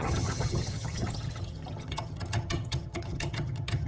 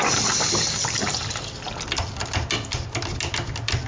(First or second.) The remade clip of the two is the first